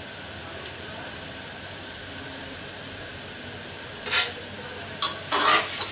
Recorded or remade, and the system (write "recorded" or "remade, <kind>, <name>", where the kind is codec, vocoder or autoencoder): recorded